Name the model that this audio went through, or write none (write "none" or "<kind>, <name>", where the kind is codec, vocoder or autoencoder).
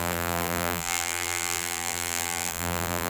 vocoder, BigVGAN v2